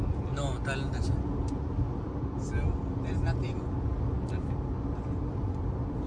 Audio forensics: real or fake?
real